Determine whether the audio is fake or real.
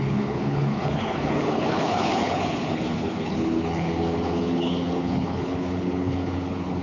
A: fake